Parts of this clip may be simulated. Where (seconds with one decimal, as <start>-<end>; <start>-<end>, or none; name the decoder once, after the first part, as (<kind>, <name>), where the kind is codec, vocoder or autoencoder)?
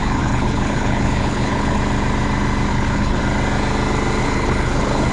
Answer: 0.0-1.8 (codec, HILCodec); 2.7-3.2; 4.2-5.1